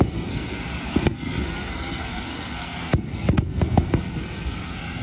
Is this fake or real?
fake